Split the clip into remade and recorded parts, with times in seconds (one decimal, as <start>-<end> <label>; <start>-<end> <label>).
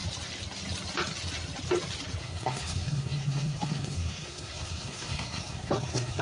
0.0-2.2 recorded; 2.2-6.2 remade